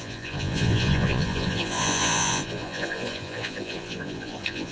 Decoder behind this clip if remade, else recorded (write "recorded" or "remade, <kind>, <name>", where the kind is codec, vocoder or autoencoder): remade, vocoder, Vocos